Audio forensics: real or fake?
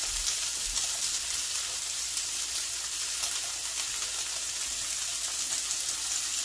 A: real